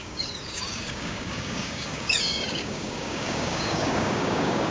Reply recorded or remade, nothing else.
remade